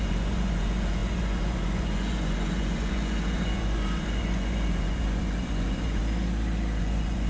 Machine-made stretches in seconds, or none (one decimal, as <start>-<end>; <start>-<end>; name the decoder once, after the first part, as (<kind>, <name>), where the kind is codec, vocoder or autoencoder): 0.0-6.0 (vocoder, Vocos); 6.8-7.3